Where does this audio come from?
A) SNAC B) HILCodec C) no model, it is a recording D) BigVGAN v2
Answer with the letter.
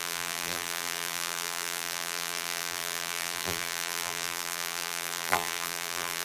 D